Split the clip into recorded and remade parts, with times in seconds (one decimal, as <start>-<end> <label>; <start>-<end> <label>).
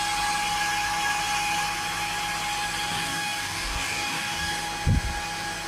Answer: 0.0-2.9 recorded; 2.9-4.5 remade; 4.5-5.7 recorded